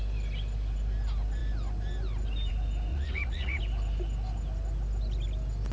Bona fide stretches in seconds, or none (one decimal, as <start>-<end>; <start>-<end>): 0.0-2.9; 3.6-5.7